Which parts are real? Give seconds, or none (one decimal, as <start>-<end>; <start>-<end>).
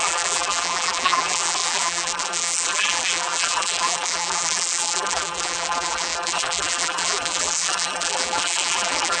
none